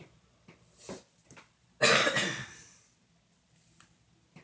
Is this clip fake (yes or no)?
no